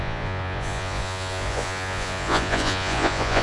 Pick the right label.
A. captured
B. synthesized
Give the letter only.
B